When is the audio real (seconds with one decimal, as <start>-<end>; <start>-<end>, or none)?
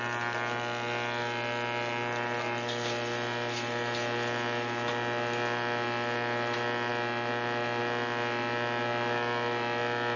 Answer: 0.0-10.2